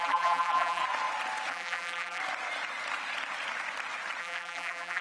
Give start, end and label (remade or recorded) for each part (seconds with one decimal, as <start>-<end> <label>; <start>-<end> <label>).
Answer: 0.0-0.8 remade; 0.8-1.5 recorded; 1.5-2.2 remade; 2.2-4.2 recorded; 4.2-5.0 remade